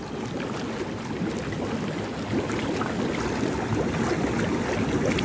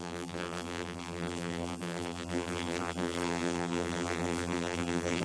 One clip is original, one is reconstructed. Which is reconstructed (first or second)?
second